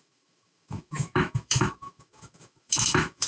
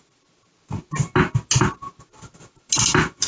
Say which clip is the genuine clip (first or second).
second